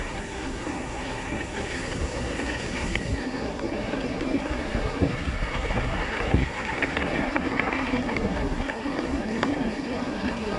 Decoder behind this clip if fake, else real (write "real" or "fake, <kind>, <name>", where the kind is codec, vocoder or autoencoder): fake, codec, SNAC